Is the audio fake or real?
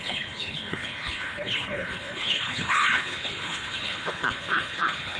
fake